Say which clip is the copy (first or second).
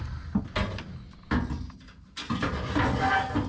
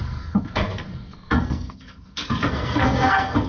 second